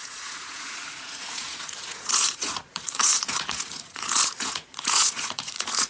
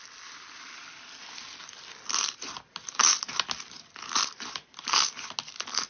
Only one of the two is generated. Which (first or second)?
first